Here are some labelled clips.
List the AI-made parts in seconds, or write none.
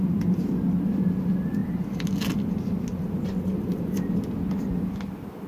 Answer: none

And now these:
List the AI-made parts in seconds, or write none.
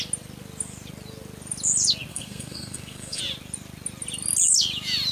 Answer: 2.1-3.2 (codec, SNAC)